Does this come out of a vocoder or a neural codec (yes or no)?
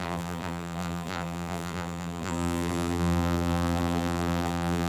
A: yes